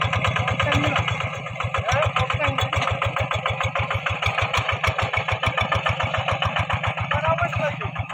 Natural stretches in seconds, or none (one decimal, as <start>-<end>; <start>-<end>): 0.0-7.5